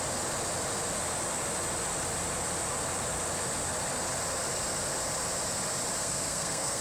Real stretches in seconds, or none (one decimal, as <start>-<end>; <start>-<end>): 0.0-6.0